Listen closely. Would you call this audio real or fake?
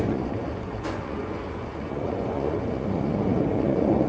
fake